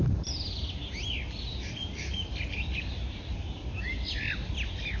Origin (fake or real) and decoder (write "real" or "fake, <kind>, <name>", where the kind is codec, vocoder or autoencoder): real